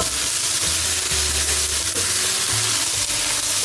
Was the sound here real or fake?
real